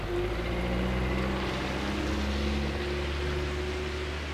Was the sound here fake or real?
real